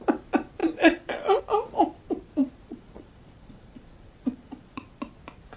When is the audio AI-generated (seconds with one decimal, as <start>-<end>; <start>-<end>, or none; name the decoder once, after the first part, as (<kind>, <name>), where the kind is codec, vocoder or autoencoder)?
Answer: 0.6-1.4 (vocoder, Vocos); 2.4-5.0